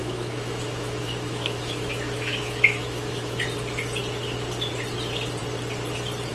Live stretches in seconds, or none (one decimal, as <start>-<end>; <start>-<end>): 3.4-6.3